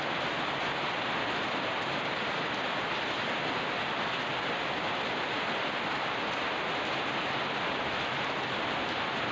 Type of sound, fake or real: real